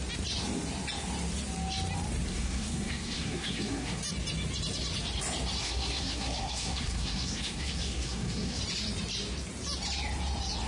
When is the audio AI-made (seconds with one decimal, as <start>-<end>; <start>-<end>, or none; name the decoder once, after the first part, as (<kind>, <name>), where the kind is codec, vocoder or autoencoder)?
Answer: 2.3-4.0 (codec, SNAC); 5.6-8.6